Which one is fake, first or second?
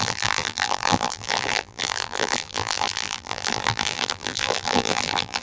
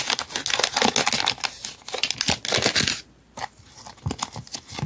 first